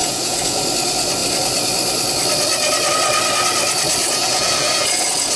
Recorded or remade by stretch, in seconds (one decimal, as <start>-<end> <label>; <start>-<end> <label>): 0.0-0.6 remade; 0.6-4.0 recorded; 4.0-5.4 remade